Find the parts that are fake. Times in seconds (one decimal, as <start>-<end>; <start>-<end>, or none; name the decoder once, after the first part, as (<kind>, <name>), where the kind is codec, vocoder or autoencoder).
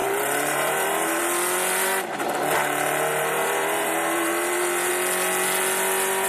0.0-1.2 (vocoder, BigVGAN v2); 3.1-4.9